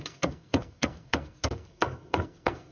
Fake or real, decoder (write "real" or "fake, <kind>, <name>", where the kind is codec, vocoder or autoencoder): fake, codec, SNAC